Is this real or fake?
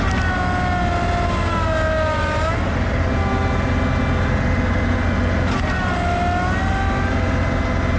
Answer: real